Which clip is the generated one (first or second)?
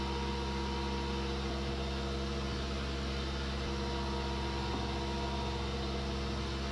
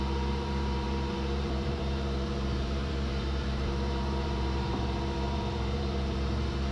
second